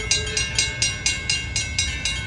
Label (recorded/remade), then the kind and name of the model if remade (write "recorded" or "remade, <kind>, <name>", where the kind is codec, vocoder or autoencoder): recorded